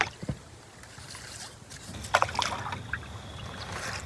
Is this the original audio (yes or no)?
yes